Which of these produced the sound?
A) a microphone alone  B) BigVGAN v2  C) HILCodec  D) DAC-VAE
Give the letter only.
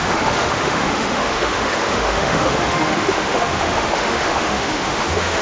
D